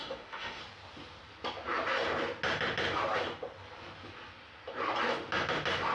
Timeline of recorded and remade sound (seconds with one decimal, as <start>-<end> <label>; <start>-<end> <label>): 0.0-0.6 remade; 0.6-5.9 recorded